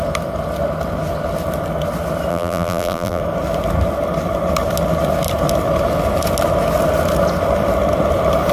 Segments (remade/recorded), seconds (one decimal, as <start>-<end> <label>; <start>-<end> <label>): 0.0-2.3 recorded; 2.3-3.2 remade; 3.2-8.5 recorded